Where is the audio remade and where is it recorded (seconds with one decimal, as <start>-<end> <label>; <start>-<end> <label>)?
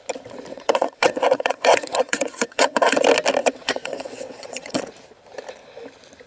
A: 0.0-0.5 recorded; 0.5-3.0 remade; 3.0-3.4 recorded; 3.4-4.8 remade; 4.8-6.3 recorded